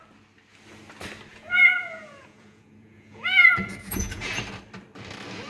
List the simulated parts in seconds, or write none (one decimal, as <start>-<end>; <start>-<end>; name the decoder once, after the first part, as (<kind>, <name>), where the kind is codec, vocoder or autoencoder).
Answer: 1.3-4.4 (vocoder, Vocos)